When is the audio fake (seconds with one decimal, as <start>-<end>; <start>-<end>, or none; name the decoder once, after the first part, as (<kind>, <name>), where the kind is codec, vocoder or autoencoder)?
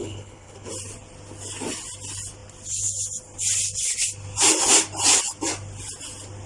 0.0-0.7 (codec, HILCodec)